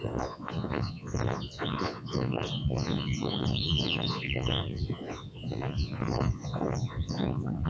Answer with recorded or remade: remade